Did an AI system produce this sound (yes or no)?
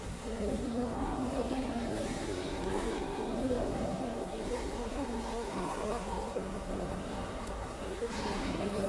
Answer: yes